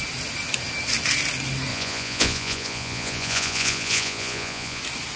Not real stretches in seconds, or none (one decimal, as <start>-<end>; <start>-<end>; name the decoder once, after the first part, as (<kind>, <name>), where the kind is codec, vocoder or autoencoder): 1.7-4.8 (vocoder, Vocos)